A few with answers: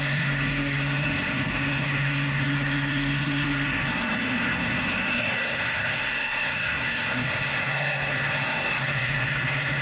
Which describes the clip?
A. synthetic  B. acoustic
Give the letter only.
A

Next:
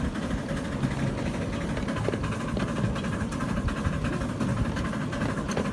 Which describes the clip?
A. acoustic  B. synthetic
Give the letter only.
A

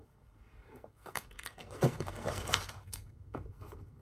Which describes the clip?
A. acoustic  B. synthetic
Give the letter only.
B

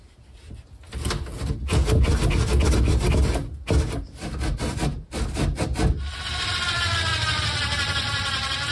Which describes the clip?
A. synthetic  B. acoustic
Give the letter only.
B